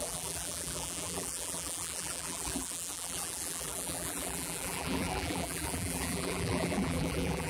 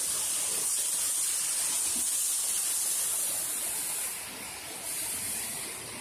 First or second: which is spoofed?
first